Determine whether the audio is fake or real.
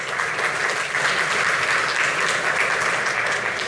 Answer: real